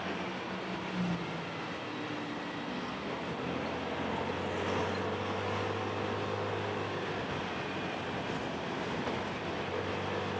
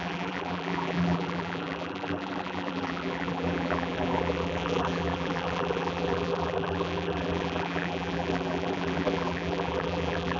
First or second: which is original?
first